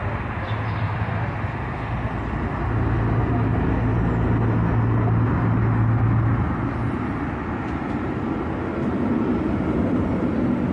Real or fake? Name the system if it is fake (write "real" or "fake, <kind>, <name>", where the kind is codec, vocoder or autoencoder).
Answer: real